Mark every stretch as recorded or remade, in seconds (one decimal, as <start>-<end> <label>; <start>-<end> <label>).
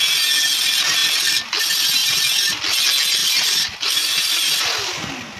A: 0.0-3.2 recorded; 3.2-4.5 remade; 4.5-5.4 recorded